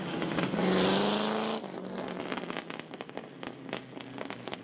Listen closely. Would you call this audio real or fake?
real